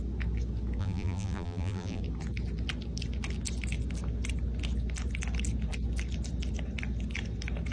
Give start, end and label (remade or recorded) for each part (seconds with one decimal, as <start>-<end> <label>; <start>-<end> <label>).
0.0-0.8 recorded; 0.8-2.0 remade; 2.0-7.7 recorded